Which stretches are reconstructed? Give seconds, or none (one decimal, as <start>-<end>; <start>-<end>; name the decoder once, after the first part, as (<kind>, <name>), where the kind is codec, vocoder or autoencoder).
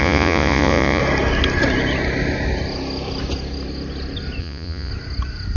0.0-1.0 (vocoder, Vocos); 4.4-4.9